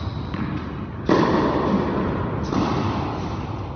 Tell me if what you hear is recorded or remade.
recorded